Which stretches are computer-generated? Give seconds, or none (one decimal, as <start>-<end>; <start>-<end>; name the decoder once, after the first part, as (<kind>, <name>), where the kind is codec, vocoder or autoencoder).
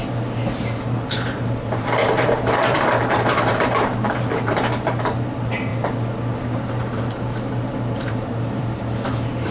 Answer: 0.0-5.7 (vocoder, BigVGAN v2); 6.3-9.5